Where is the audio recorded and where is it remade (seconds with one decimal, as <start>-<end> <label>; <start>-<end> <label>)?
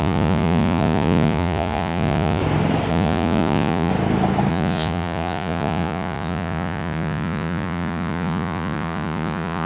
0.0-2.4 remade; 2.4-2.9 recorded; 2.9-3.9 remade; 3.9-4.5 recorded; 4.5-9.7 remade